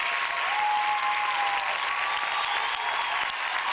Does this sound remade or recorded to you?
recorded